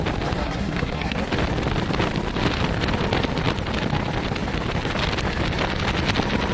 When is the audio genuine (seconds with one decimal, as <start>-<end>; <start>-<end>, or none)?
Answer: 0.0-0.4; 1.3-6.5